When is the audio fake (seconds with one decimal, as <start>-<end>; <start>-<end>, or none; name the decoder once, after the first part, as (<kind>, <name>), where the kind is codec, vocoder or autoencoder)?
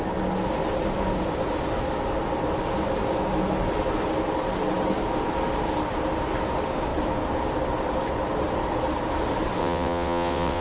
9.6-10.6 (vocoder, WaveNeXt)